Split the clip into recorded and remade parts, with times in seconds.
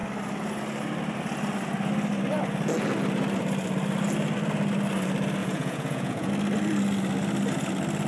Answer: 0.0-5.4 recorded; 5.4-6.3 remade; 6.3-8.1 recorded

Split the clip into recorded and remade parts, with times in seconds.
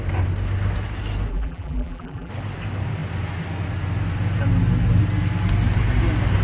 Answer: 0.0-1.3 recorded; 1.3-2.3 remade; 2.3-6.4 recorded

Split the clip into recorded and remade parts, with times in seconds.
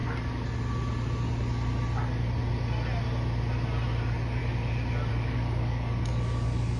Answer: 0.0-4.0 recorded; 4.0-4.4 remade; 4.4-5.1 recorded; 5.1-6.8 remade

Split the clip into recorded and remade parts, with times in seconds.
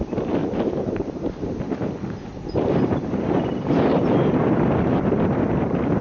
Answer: 0.0-0.4 recorded; 0.4-1.5 remade; 1.5-2.3 recorded; 2.3-6.0 remade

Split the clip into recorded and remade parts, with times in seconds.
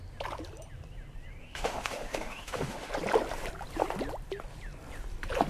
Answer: 0.0-1.4 recorded; 1.4-2.9 remade; 2.9-5.5 recorded